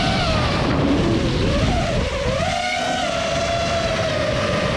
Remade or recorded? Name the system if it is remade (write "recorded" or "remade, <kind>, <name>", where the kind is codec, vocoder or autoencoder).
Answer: remade, vocoder, BigVGAN v2